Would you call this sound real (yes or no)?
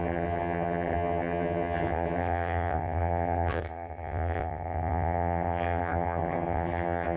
no